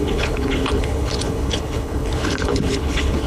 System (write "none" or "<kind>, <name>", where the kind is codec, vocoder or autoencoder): codec, HILCodec